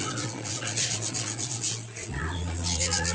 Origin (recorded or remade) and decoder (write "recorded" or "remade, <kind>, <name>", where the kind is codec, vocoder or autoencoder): remade, vocoder, Vocos